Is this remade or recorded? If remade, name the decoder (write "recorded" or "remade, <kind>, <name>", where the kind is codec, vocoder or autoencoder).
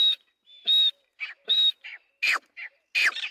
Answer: recorded